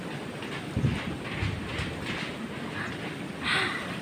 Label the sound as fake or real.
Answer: real